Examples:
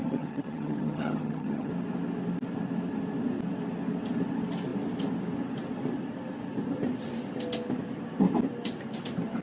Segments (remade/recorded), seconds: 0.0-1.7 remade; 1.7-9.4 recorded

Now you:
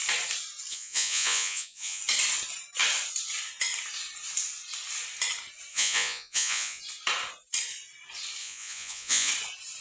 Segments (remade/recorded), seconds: 0.0-0.7 recorded; 0.7-2.0 remade; 2.0-5.7 recorded; 5.7-6.8 remade; 6.8-8.4 recorded; 8.4-9.3 remade; 9.3-9.8 recorded

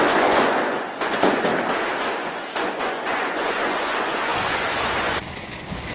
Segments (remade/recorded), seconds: 0.0-1.5 remade; 1.5-2.0 recorded; 2.0-5.9 remade

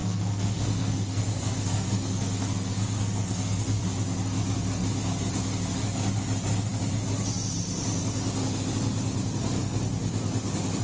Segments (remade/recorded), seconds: 0.0-3.8 remade; 3.8-10.8 recorded

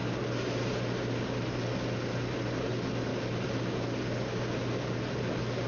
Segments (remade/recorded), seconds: 0.0-5.7 recorded

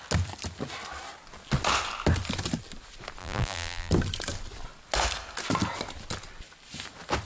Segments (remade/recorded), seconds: 0.0-3.2 recorded; 3.2-3.9 remade; 3.9-7.2 recorded

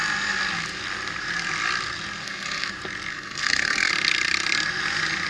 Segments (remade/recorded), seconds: 0.0-2.2 recorded; 2.2-2.7 remade; 2.7-3.1 recorded; 3.1-3.9 remade; 3.9-5.3 recorded

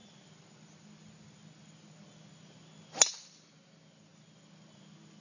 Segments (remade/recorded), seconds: 0.0-5.2 recorded